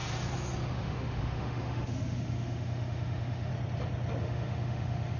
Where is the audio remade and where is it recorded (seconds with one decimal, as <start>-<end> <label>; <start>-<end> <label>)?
0.0-0.7 recorded; 0.7-3.5 remade; 3.5-4.2 recorded; 4.2-5.2 remade